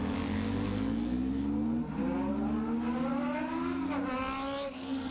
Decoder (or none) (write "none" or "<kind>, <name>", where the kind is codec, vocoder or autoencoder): none